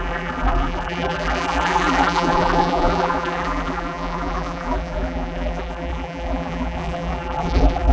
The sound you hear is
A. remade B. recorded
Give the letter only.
A